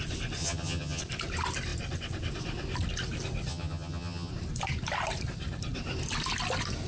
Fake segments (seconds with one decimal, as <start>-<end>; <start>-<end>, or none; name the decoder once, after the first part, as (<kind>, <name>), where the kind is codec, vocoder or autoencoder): 0.4-1.0 (vocoder, HiFi-GAN); 3.5-4.3